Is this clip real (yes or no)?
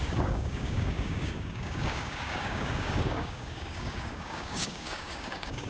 no